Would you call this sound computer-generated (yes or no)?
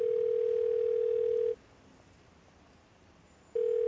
no